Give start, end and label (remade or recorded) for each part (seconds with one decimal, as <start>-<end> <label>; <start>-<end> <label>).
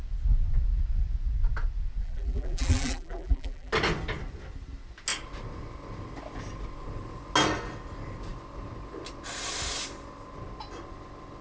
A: 0.0-2.0 recorded; 2.0-3.7 remade; 3.7-11.4 recorded